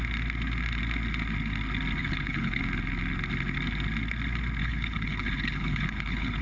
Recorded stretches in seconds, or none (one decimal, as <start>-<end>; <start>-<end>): 0.0-2.0; 2.6-4.6